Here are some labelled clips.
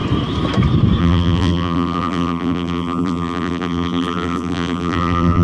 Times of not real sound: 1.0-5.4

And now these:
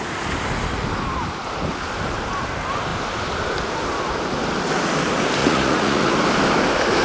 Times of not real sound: 5.4-6.1

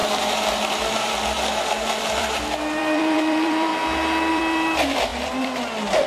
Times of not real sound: 2.2-3.7; 4.3-6.1

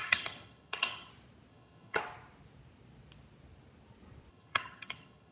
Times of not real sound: 0.0-1.1; 1.5-2.0; 4.3-5.3